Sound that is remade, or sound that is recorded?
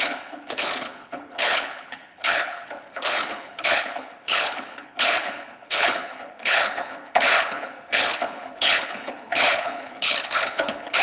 remade